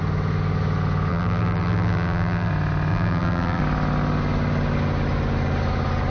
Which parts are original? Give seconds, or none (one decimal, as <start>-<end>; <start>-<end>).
0.0-1.1; 2.5-2.9; 3.6-6.1